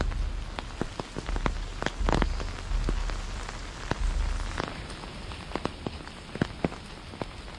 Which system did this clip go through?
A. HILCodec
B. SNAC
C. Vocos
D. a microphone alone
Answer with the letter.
D